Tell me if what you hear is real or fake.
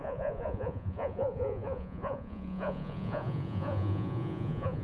fake